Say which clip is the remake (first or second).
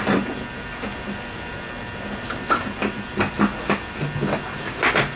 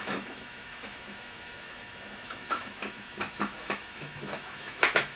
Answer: second